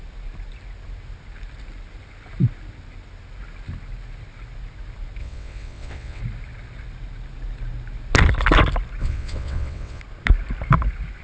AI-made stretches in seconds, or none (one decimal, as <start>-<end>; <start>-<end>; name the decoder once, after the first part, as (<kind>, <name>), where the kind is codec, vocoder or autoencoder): 5.2-6.2 (vocoder, WaveNeXt); 9.0-10.0